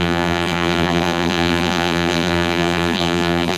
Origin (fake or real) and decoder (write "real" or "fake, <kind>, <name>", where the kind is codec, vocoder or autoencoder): fake, vocoder, BigVGAN v2